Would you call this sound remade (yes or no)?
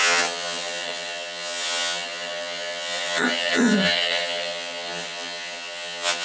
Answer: yes